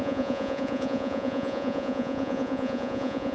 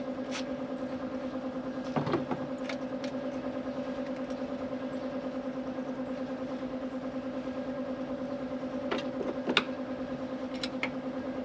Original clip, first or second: second